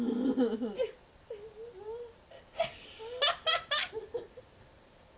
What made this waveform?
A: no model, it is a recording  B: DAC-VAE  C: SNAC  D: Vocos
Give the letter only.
A